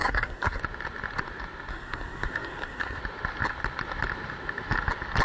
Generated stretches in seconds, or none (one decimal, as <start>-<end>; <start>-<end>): 0.0-0.6; 1.7-3.0